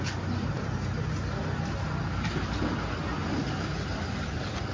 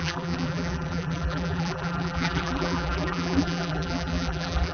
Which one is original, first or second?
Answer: first